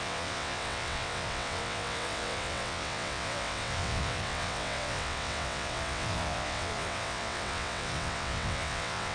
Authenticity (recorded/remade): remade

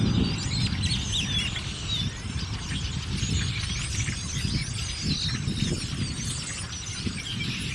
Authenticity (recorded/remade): recorded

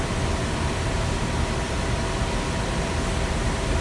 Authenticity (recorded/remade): recorded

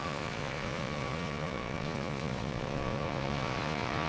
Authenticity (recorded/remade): remade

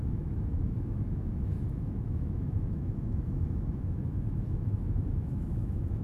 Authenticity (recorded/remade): remade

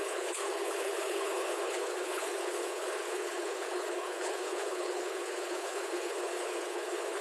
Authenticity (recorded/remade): remade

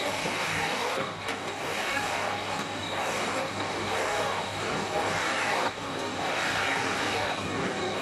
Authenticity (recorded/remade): remade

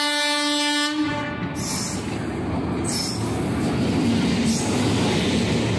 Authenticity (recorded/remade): recorded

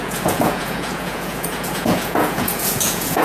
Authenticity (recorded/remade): remade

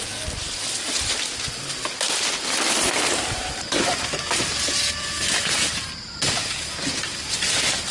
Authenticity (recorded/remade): recorded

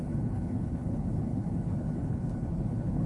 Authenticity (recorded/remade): remade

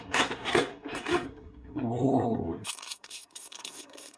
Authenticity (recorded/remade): remade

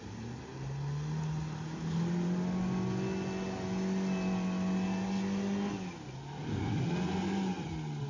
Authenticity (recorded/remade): recorded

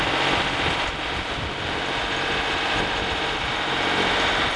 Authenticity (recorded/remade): recorded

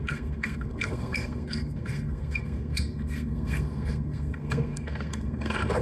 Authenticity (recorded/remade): remade